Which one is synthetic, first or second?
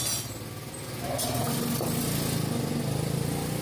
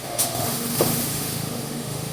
second